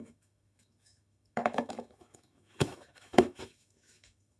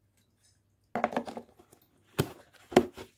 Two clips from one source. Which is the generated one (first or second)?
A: first